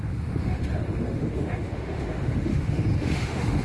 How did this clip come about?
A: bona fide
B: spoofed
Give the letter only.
B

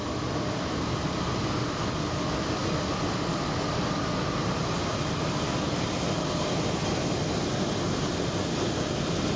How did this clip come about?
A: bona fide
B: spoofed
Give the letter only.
A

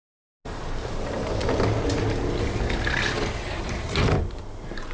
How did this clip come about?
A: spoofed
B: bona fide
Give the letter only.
B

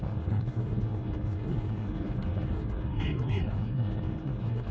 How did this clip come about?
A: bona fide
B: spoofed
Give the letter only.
B